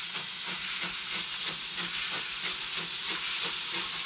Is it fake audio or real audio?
real